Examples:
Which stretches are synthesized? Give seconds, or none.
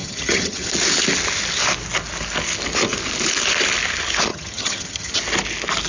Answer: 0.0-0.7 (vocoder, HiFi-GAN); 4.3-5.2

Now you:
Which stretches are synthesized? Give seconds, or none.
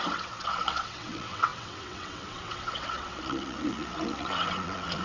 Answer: 0.0-5.0 (vocoder, WaveNeXt)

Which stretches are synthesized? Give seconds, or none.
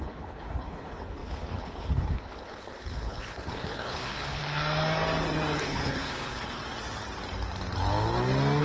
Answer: 0.0-4.4 (codec, HILCodec); 5.6-6.6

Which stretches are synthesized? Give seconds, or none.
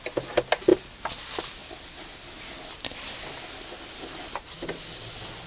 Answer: none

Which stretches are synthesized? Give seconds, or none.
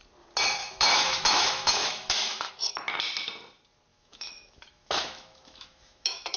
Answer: 0.6-2.5 (autoencoder, DAC-VAE); 3.9-6.4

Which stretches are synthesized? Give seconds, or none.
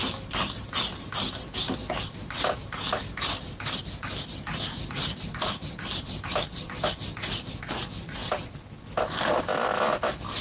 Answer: none